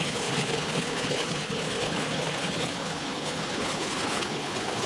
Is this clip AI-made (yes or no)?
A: yes